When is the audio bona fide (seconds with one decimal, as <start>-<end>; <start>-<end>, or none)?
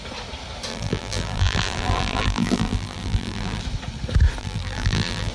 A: 0.0-0.7; 3.6-4.4